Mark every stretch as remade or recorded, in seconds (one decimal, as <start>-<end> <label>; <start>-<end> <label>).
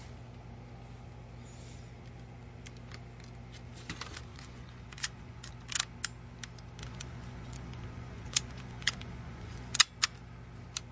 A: 0.0-4.3 recorded; 4.3-5.5 remade; 5.5-6.8 recorded; 6.8-9.8 remade; 9.8-10.9 recorded